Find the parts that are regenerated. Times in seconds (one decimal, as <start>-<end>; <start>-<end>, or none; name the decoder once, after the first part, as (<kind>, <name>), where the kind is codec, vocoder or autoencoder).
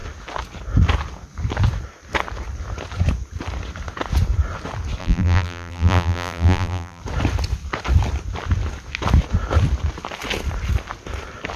5.0-7.0 (vocoder, BigVGAN v2)